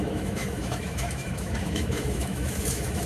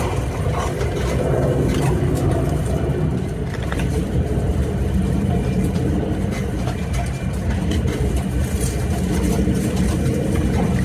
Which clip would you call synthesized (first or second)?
first